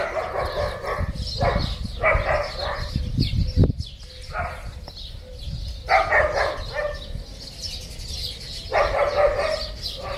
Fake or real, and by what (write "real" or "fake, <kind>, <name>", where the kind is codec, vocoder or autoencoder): real